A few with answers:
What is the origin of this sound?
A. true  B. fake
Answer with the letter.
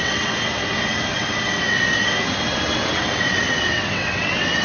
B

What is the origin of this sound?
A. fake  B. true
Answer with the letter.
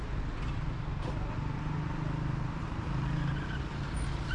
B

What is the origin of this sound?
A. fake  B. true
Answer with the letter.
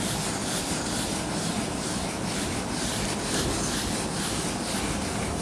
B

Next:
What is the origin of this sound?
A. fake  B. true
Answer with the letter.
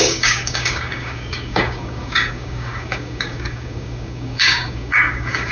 A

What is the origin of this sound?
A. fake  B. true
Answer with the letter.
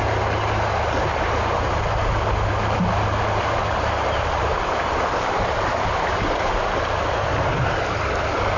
B